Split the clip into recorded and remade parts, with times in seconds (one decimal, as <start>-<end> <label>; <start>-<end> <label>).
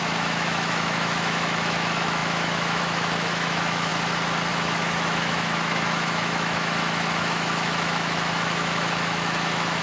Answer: 0.0-3.9 remade; 3.9-4.5 recorded; 4.5-9.8 remade